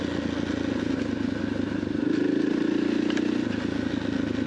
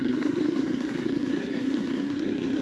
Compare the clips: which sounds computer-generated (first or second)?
second